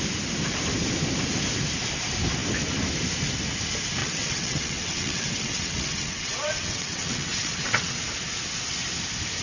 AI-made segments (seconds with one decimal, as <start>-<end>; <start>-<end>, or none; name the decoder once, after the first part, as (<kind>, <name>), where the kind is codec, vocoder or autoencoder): 4.0-8.0 (vocoder, WaveNeXt)